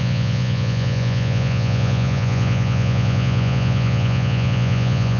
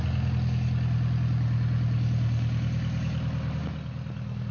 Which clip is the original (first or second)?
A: second